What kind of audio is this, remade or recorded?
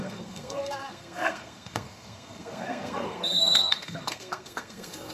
remade